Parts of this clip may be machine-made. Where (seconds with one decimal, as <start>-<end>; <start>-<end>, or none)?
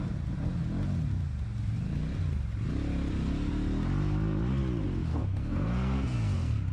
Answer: 5.1-6.7